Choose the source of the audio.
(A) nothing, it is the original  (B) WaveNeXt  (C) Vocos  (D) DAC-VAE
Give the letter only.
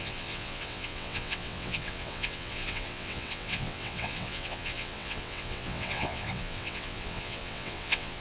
B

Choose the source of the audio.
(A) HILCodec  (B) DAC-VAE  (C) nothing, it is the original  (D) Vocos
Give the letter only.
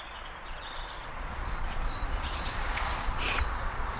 D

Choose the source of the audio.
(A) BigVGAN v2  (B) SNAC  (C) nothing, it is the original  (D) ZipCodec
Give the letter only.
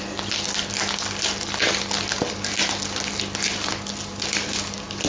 C